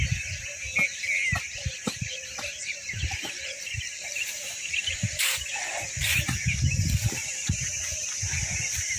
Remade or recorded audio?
recorded